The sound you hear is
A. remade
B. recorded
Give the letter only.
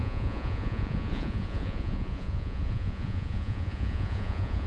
A